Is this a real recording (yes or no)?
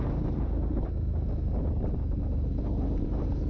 yes